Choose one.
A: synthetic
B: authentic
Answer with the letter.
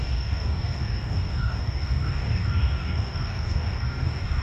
A